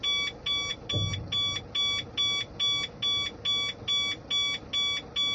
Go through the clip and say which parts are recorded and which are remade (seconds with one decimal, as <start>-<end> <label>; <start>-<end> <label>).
0.0-5.3 recorded